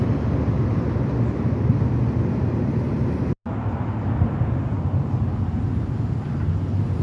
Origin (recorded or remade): recorded